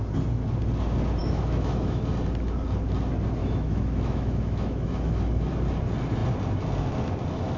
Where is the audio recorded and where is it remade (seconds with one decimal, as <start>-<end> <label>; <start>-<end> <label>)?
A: 0.0-1.2 recorded; 1.2-2.0 remade; 2.0-3.4 recorded; 3.4-5.5 remade; 5.5-7.6 recorded